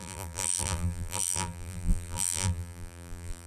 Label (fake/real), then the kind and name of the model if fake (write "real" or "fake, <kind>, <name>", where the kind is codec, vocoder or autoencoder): fake, vocoder, BigVGAN v2